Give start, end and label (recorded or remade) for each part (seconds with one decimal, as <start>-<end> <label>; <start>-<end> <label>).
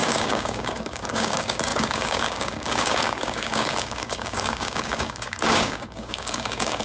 0.0-6.8 remade